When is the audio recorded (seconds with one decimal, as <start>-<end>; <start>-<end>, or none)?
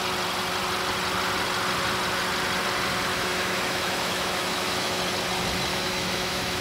0.0-3.1; 5.0-5.7